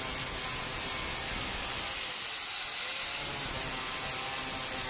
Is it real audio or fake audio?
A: real